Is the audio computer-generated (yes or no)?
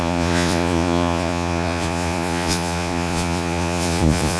yes